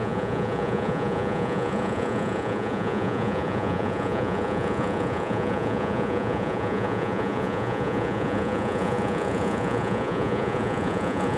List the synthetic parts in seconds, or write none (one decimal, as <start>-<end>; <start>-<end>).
0.0-11.4